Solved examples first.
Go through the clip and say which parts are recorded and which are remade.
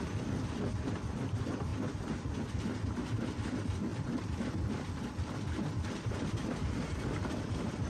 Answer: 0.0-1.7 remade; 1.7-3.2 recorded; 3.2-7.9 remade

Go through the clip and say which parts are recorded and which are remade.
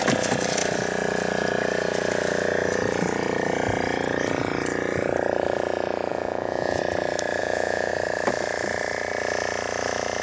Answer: 0.0-6.1 recorded; 6.1-6.8 remade; 6.8-7.4 recorded; 7.4-7.9 remade; 7.9-10.2 recorded